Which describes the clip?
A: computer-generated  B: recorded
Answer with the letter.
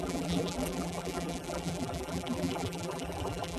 A